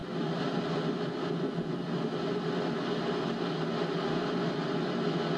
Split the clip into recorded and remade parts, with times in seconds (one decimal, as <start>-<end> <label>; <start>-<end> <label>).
0.0-5.4 recorded